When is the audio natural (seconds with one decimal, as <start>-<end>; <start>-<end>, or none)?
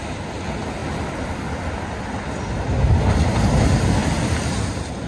0.0-5.1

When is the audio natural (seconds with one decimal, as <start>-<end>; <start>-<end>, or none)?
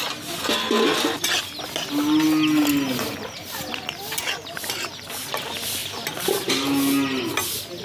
0.0-7.8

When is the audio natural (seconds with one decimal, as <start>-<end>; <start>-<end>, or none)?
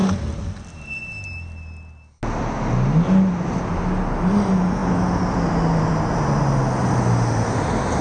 0.0-8.0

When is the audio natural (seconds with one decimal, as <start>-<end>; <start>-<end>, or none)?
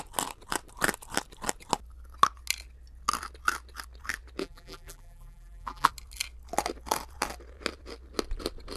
0.0-4.4; 5.9-8.8